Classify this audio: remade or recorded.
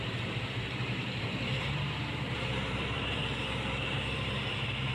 remade